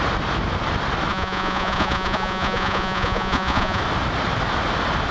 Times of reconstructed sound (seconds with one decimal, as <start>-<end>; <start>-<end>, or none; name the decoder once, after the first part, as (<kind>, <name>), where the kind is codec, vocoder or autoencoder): 1.1-3.8 (vocoder, Vocos)